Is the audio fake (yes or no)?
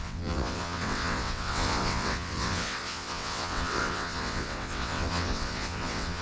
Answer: yes